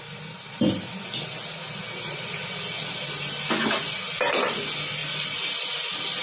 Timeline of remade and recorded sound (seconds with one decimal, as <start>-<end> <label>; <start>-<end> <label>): 0.0-6.2 recorded